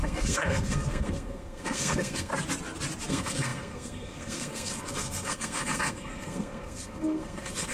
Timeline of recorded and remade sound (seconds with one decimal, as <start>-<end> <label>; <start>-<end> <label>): 0.0-2.3 remade; 2.3-3.1 recorded; 3.1-7.7 remade